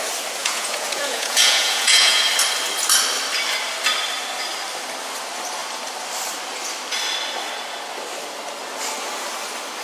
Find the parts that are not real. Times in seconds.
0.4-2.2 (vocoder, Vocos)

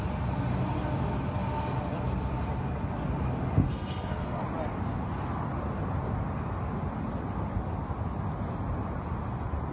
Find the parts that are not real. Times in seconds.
3.6-4.4 (codec, SNAC)

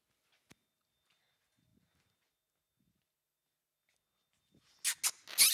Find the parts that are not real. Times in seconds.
none

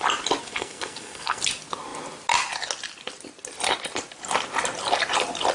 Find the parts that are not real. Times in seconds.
0.4-1.4 (codec, SNAC)